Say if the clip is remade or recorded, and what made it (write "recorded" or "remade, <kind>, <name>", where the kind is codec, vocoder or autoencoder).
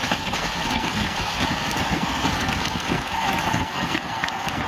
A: remade, codec, SNAC